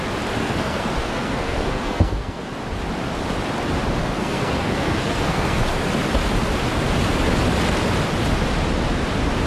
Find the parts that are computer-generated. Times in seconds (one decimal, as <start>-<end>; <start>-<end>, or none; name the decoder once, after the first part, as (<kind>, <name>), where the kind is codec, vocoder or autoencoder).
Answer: 0.4-2.5 (codec, SNAC); 4.0-5.6